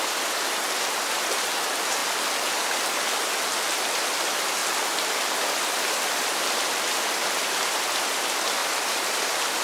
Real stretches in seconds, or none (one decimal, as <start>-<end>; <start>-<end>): 2.0-3.4